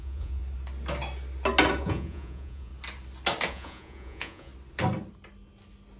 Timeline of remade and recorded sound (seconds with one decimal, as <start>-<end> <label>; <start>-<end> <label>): 0.0-0.4 remade; 0.4-1.8 recorded; 1.8-2.7 remade; 2.7-3.5 recorded; 3.5-4.5 remade; 4.5-6.0 recorded